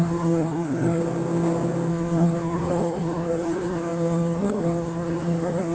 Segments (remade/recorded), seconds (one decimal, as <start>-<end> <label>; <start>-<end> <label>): 0.0-1.0 remade; 1.0-1.9 recorded; 1.9-5.7 remade